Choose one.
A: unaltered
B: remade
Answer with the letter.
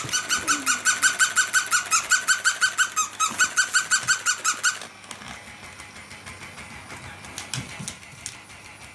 A